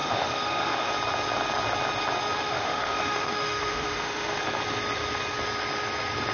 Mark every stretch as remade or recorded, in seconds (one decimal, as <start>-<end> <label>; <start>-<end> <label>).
0.0-0.9 remade; 0.9-2.3 recorded; 2.3-4.4 remade; 4.4-6.3 recorded